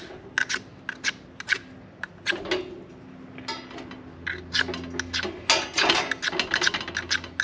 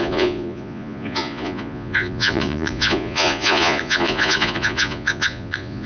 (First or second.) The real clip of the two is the first